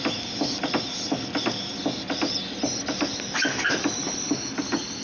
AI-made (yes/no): no